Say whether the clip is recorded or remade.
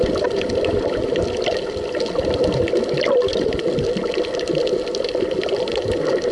recorded